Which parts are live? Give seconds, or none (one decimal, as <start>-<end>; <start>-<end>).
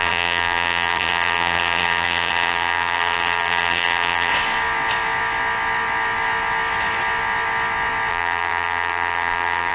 4.3-8.1